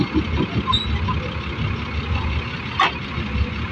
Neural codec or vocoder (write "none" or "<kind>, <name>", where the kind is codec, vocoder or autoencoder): none